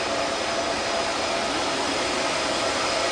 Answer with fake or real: fake